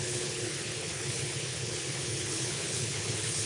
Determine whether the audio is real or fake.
fake